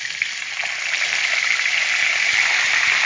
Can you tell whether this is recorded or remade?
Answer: recorded